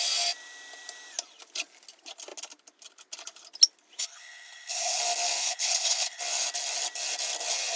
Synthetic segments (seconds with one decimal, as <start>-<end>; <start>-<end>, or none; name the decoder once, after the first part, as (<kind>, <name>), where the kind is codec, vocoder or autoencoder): 4.0-5.0 (codec, HILCodec); 5.4-6.2